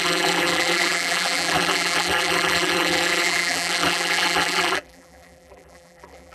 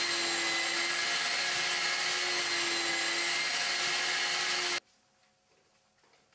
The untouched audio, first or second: second